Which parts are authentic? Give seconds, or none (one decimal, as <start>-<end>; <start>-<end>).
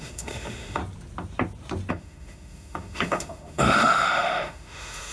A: 0.8-1.9